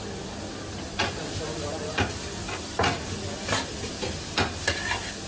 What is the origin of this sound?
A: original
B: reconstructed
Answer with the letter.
A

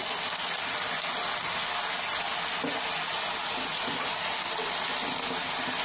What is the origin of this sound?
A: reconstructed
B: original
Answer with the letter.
B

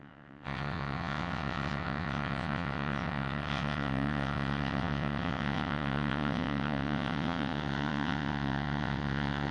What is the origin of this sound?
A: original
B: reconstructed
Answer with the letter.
B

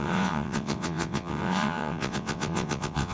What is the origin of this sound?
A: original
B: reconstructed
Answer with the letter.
B